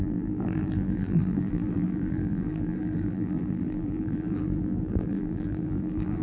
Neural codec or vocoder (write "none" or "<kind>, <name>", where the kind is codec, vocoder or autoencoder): vocoder, BigVGAN v2